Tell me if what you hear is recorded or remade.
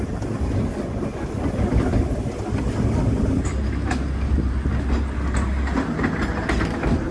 recorded